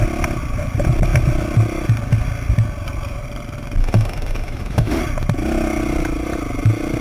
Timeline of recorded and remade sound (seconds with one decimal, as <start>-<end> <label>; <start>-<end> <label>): 0.0-3.8 recorded; 3.8-5.0 remade; 5.0-7.0 recorded